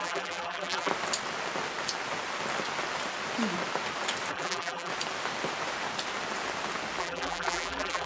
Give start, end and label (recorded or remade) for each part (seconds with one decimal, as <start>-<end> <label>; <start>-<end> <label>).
0.0-0.9 remade; 0.9-4.3 recorded; 4.3-4.9 remade; 4.9-7.0 recorded; 7.0-8.1 remade